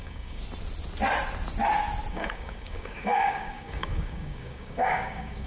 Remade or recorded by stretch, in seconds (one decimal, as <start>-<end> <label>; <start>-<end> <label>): 0.0-0.4 remade; 0.4-2.1 recorded; 2.1-5.5 remade

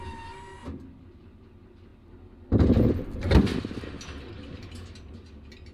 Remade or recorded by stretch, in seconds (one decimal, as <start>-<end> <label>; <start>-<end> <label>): 0.0-5.7 recorded